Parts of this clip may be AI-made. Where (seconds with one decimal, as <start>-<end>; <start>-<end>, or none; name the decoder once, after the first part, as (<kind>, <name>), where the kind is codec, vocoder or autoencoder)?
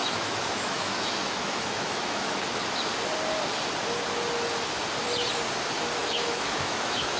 0.0-2.6 (autoencoder, DAC-VAE); 6.0-7.2